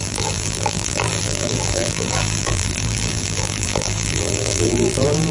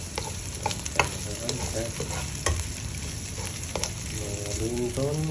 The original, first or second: second